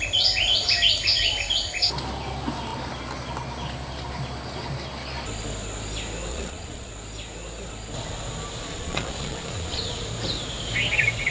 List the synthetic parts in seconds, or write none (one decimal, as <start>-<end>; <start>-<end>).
6.3-6.9; 8.7-9.9